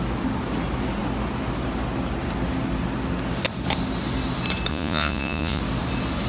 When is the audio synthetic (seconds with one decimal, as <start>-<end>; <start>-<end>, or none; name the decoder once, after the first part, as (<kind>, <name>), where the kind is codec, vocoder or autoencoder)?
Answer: 4.7-5.6 (vocoder, Vocos)